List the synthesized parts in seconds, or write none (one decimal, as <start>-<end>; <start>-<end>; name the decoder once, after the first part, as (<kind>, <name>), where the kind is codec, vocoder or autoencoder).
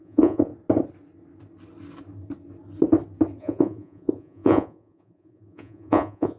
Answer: 0.0-0.5 (vocoder, Vocos); 3.4-6.4